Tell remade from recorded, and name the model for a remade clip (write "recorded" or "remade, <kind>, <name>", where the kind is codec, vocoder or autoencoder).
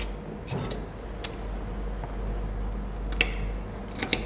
recorded